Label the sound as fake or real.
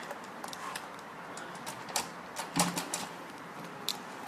real